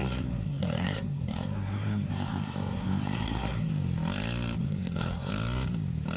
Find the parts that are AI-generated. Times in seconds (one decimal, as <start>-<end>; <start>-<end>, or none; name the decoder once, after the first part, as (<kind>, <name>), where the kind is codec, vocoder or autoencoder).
0.0-3.7 (codec, SNAC); 4.6-5.3